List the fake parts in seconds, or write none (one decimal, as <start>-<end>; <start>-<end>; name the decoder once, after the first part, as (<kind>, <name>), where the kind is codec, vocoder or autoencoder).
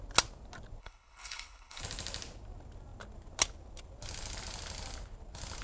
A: 0.8-1.8 (codec, HILCodec)